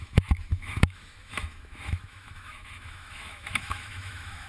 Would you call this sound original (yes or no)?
no